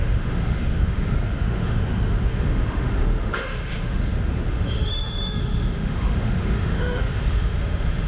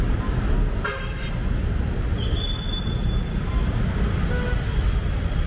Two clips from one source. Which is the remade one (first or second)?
first